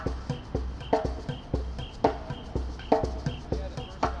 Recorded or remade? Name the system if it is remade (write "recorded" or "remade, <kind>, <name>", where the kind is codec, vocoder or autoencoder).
recorded